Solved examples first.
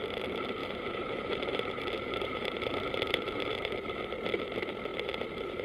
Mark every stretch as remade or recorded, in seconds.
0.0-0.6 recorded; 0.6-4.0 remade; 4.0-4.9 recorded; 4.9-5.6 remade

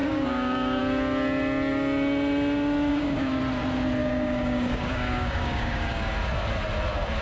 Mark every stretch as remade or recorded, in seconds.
0.0-0.8 remade; 0.8-2.9 recorded; 2.9-3.4 remade; 3.4-4.0 recorded; 4.0-6.1 remade; 6.1-7.2 recorded

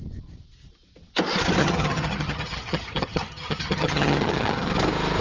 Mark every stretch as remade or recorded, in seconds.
0.0-1.6 recorded; 1.6-4.7 remade; 4.7-5.2 recorded